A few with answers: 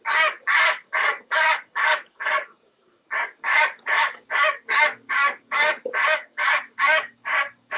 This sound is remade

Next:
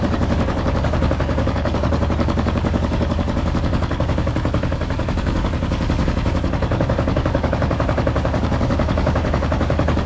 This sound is remade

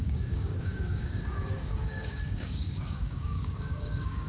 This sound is remade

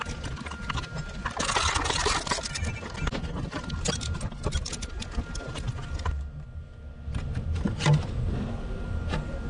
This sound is recorded